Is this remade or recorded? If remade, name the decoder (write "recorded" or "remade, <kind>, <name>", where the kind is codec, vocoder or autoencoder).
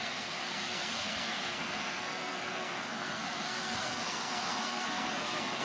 remade, codec, SNAC